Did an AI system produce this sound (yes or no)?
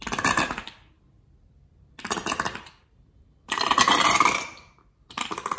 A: no